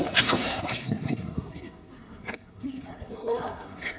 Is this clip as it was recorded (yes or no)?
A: no